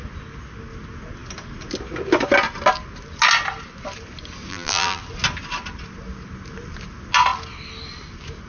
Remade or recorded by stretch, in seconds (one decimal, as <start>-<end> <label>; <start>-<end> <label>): 0.0-4.5 recorded; 4.5-5.0 remade; 5.0-8.5 recorded